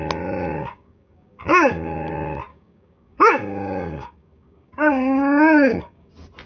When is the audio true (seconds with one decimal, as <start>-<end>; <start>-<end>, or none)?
0.0-0.5; 2.1-2.5; 6.1-6.5